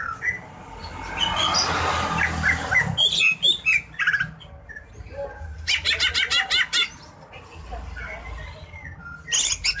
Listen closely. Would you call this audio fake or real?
real